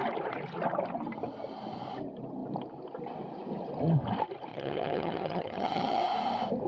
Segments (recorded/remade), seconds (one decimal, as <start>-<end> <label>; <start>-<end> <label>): 0.0-4.5 recorded; 4.5-6.0 remade; 6.0-6.7 recorded